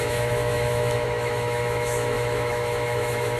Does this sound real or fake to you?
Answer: fake